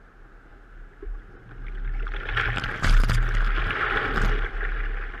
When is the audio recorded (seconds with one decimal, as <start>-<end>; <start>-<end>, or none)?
0.0-5.2